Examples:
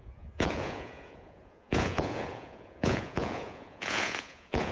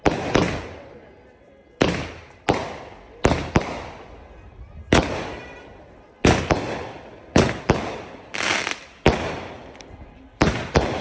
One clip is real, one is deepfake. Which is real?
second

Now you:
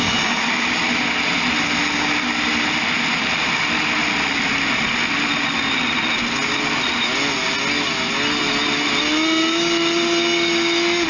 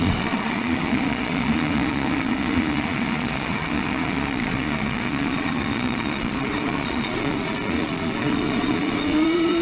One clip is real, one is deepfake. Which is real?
first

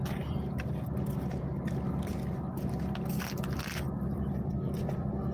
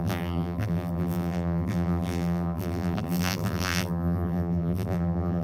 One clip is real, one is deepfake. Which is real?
first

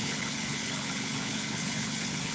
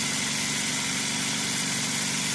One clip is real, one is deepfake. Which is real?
second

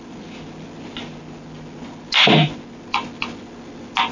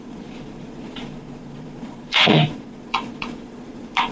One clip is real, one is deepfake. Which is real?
first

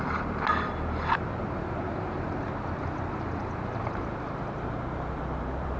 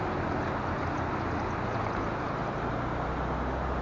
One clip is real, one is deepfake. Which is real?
second